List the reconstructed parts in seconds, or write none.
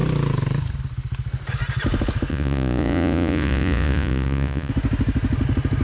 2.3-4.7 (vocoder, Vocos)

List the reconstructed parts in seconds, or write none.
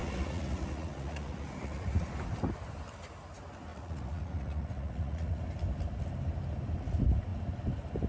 0.0-2.1 (vocoder, Vocos); 3.7-5.4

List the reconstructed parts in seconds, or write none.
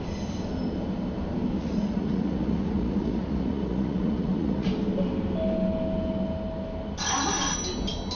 1.6-4.7 (vocoder, Vocos)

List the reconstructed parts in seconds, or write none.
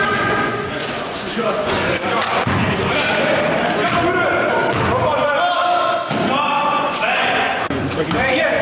0.0-2.6 (vocoder, Vocos); 6.5-8.6